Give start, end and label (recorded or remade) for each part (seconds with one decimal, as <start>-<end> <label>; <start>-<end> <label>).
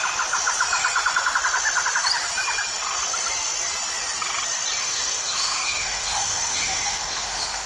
0.0-4.8 recorded; 4.8-7.7 remade